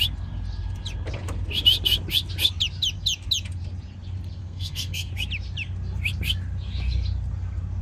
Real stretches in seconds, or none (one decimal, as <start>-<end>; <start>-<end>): 0.0-4.4; 5.1-7.8